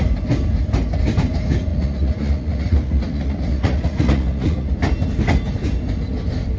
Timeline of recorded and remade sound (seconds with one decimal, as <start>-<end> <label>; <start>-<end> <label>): 0.0-1.7 recorded; 1.7-4.7 remade; 4.7-6.6 recorded